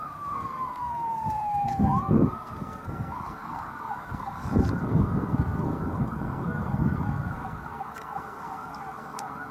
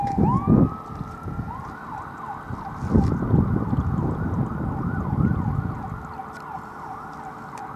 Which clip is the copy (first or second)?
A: first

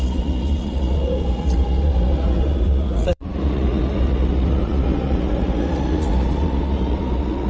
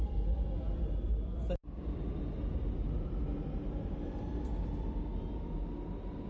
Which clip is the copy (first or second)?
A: first